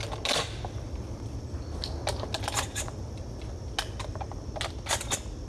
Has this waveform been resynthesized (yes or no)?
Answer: no